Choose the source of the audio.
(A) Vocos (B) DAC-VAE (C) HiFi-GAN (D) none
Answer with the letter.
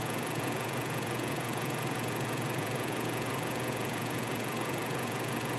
A